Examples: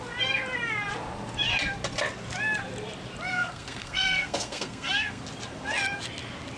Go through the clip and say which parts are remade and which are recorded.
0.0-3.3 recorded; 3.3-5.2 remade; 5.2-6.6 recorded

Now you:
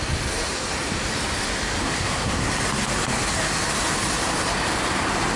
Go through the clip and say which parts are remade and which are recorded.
0.0-1.8 recorded; 1.8-2.5 remade; 2.5-5.4 recorded

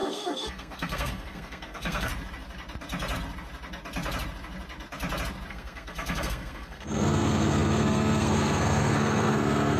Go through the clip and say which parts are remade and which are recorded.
0.0-2.1 remade; 2.1-5.5 recorded; 5.5-9.8 remade

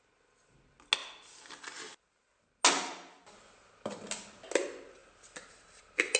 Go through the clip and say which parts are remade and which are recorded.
0.0-6.2 recorded

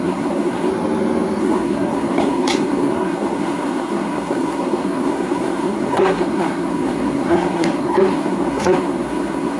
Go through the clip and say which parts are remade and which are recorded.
0.0-0.7 remade; 0.7-1.4 recorded; 1.4-9.6 remade

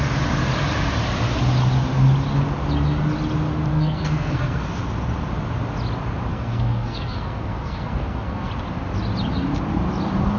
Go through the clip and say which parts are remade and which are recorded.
0.0-3.7 recorded; 3.7-4.6 remade; 4.6-6.3 recorded; 6.3-8.5 remade; 8.5-10.4 recorded

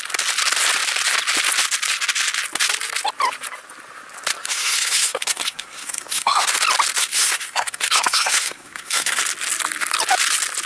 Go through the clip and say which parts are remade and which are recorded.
0.0-4.4 recorded; 4.4-6.5 remade; 6.5-7.0 recorded; 7.0-9.2 remade; 9.2-10.7 recorded

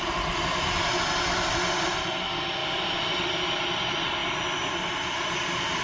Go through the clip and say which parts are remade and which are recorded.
0.0-5.8 recorded